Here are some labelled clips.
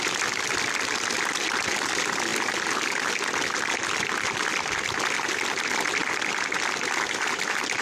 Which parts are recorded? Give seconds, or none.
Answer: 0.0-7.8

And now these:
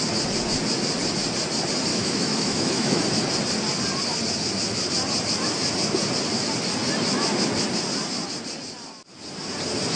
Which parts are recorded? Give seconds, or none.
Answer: 0.0-1.9; 3.0-10.0

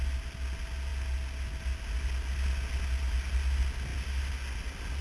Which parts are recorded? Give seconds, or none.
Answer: 0.0-5.0

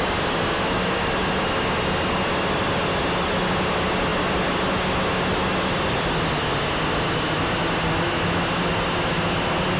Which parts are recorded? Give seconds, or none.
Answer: 0.0-9.8

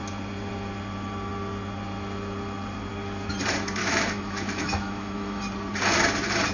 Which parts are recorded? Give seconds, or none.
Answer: 0.0-3.8; 5.4-6.5

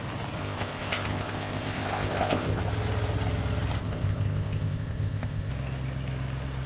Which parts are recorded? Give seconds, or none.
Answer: 0.0-0.4; 2.6-3.8; 5.5-6.7

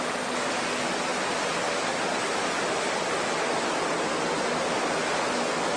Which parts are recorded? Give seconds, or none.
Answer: 0.0-5.8

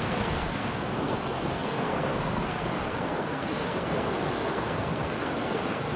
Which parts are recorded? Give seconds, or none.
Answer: none